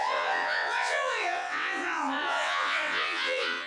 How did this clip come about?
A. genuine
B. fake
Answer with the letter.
B